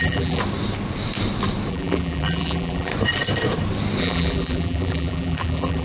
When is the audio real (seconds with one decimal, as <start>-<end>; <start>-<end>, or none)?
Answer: 0.4-1.7; 2.9-4.0